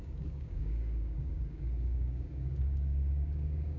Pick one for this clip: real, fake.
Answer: fake